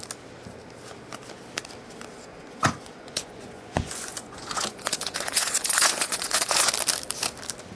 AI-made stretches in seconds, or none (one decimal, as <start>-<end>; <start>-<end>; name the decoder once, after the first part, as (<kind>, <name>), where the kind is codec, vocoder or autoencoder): 2.3-6.7 (vocoder, Vocos)